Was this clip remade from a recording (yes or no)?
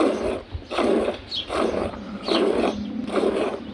no